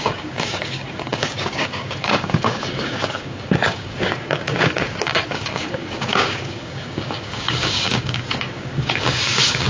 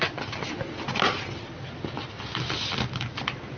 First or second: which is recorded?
second